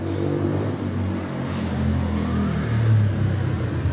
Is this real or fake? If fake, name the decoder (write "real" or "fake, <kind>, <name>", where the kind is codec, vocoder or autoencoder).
real